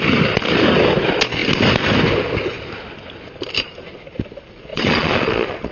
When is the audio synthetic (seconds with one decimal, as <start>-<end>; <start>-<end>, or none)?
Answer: 4.7-5.7